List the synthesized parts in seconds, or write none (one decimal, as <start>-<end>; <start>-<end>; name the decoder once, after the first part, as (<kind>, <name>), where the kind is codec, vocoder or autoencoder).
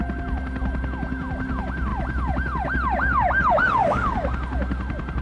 none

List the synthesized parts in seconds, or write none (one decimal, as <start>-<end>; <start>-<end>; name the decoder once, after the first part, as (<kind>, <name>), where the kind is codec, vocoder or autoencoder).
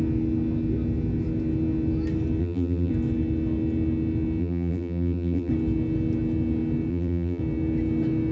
2.4-2.9 (vocoder, BigVGAN v2); 4.4-5.5; 6.9-7.4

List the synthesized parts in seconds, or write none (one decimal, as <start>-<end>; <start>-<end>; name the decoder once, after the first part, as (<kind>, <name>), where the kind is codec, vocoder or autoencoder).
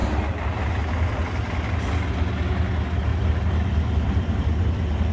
3.1-5.1 (vocoder, BigVGAN v2)